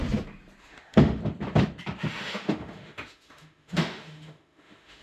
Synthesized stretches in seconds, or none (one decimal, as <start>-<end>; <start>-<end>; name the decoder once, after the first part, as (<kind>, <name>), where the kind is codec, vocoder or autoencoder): 0.6-1.2 (autoencoder, DAC-VAE); 2.1-5.0